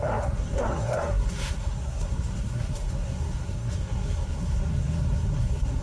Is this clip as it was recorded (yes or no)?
no